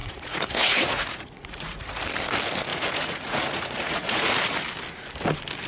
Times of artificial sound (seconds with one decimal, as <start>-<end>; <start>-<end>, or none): 0.0-2.0; 2.7-4.4